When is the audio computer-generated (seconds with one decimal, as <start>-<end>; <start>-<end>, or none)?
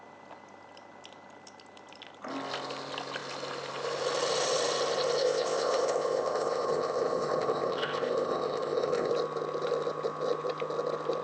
5.2-9.1